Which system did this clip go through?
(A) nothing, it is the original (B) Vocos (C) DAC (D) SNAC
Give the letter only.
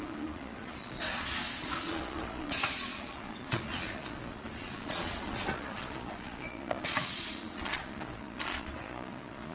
B